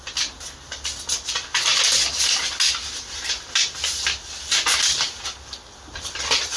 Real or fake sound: real